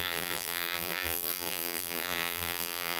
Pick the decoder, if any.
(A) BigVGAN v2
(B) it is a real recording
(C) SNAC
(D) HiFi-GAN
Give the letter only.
A